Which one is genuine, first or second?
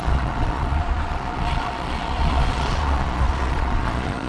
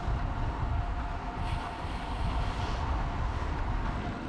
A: second